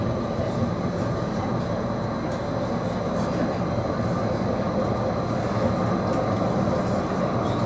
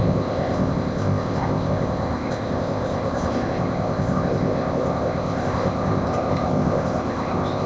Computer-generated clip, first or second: second